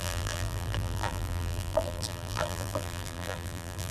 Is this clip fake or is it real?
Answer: fake